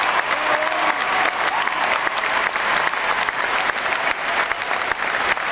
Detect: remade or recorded recorded